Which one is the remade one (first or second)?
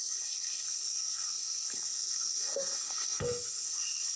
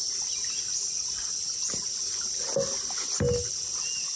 first